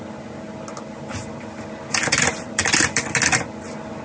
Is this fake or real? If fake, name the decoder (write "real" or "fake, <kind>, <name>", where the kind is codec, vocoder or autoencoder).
real